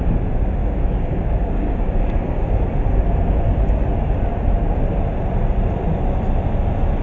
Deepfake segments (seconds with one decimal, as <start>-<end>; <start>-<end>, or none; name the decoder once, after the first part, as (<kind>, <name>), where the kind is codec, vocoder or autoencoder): 0.6-2.6 (codec, DAC)